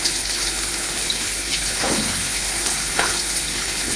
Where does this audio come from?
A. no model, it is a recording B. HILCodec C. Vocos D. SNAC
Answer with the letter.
B